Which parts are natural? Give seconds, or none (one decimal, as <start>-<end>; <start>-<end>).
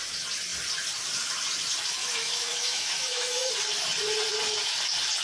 0.0-2.0; 3.5-5.2